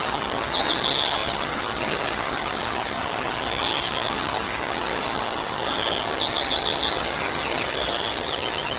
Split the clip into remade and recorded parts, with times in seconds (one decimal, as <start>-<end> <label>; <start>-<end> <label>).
0.0-8.8 remade